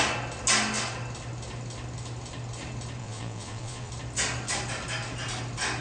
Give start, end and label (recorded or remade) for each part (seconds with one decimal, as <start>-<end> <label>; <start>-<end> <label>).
0.0-3.0 recorded; 3.0-3.9 remade; 3.9-5.8 recorded